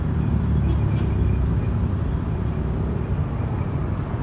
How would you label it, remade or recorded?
recorded